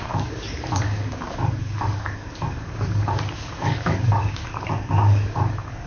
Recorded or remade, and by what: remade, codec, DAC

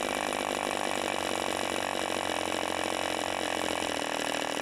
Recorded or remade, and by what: recorded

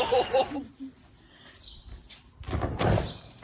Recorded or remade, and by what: remade, vocoder, BigVGAN v2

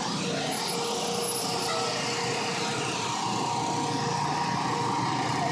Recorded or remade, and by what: recorded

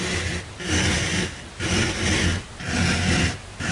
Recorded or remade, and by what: recorded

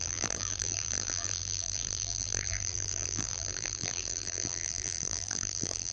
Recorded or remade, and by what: remade, vocoder, BigVGAN v2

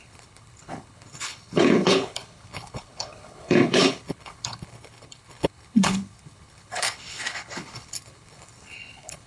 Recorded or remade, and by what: remade, codec, HILCodec